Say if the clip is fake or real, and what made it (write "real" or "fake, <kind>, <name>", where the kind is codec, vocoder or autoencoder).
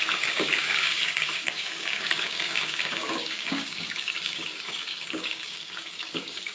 fake, codec, DAC